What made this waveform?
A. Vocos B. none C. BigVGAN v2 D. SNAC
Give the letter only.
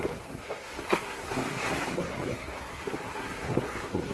D